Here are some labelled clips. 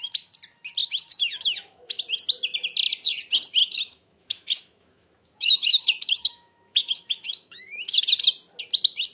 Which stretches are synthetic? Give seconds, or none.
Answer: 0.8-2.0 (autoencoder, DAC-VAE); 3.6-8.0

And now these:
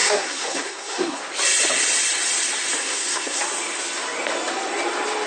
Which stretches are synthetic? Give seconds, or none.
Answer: 0.0-1.2 (codec, SNAC); 2.8-3.4

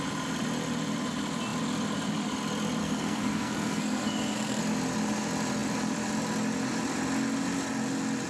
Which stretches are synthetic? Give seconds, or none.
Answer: 2.8-4.6 (codec, SNAC)

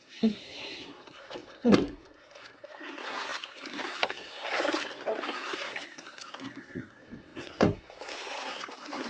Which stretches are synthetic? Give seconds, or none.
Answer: 0.0-9.1 (codec, SNAC)